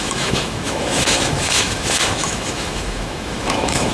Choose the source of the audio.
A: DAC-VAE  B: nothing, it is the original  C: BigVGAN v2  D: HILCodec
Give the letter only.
A